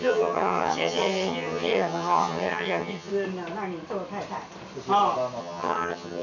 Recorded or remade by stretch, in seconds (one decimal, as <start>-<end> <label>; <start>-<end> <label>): 0.0-3.1 remade; 3.1-5.4 recorded; 5.4-6.2 remade